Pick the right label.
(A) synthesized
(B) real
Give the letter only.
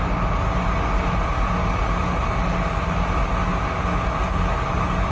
B